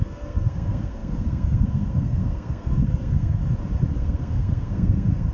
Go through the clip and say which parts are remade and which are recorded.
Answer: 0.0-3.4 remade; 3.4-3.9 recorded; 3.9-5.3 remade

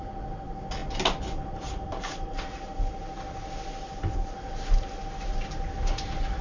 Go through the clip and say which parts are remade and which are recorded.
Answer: 0.0-6.4 recorded

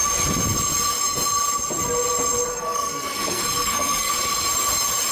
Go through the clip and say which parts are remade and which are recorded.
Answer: 0.0-2.5 recorded; 2.5-4.1 remade; 4.1-5.1 recorded

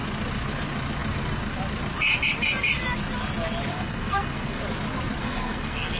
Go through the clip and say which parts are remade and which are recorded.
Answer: 0.0-3.7 recorded; 3.7-4.6 remade; 4.6-5.2 recorded; 5.2-6.0 remade